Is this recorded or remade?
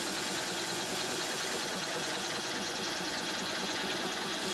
remade